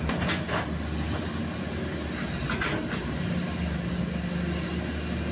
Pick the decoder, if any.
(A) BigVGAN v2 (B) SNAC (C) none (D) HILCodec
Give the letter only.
C